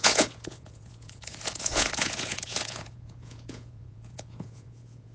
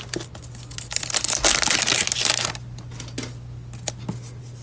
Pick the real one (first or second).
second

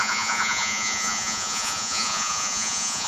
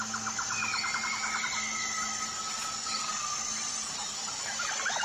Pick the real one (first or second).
second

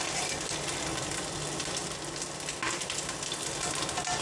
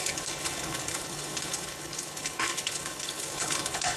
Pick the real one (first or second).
first